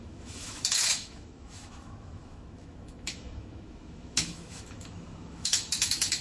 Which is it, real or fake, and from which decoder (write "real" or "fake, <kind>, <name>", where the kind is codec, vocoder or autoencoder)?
fake, autoencoder, DAC-VAE